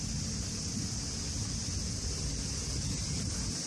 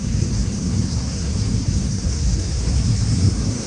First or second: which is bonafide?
first